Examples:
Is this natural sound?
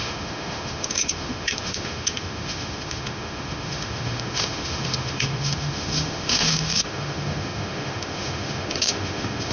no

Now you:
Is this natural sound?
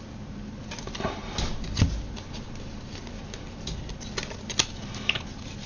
yes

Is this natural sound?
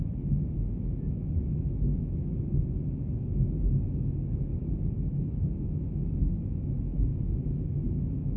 no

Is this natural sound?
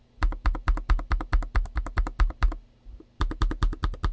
yes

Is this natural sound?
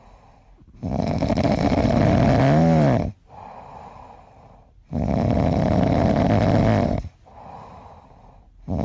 yes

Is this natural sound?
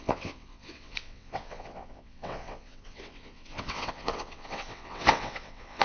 no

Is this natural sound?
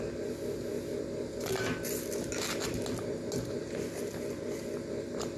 yes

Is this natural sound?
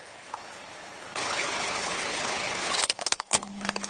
no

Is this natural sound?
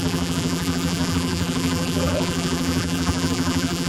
no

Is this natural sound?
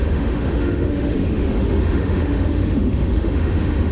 no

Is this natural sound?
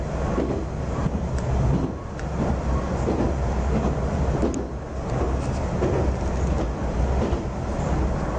yes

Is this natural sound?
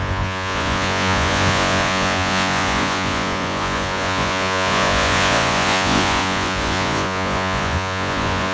no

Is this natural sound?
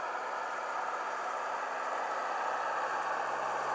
yes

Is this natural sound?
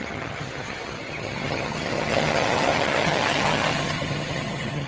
no